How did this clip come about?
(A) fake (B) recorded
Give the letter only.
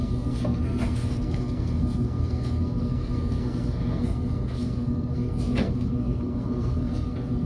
A